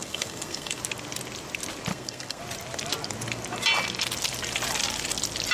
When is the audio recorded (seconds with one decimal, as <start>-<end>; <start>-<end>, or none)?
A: 0.8-1.9; 2.4-5.5